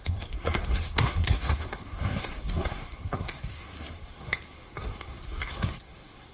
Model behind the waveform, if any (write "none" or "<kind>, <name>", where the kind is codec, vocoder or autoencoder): codec, SNAC